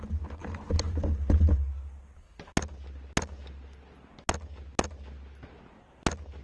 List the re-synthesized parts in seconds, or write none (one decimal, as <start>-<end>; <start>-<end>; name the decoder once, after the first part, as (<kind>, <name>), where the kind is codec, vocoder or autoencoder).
none